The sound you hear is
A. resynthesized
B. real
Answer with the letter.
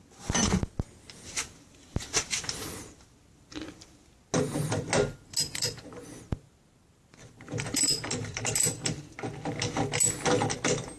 B